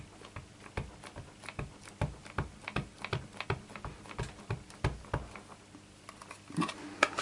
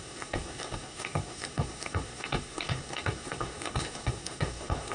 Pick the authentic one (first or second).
first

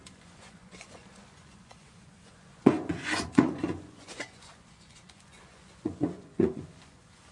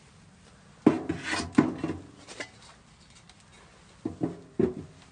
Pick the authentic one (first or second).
second